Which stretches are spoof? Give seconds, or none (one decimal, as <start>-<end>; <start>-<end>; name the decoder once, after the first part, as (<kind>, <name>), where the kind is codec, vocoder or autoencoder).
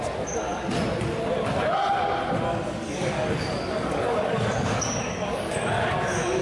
2.5-6.4 (codec, DAC)